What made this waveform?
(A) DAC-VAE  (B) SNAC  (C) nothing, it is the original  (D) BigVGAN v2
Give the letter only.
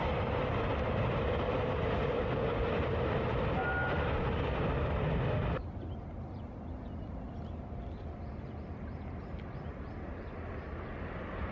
C